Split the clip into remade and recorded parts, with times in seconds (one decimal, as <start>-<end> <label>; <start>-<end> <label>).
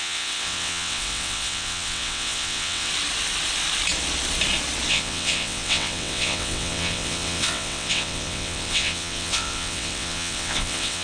0.0-2.9 remade; 2.9-4.9 recorded; 4.9-11.0 remade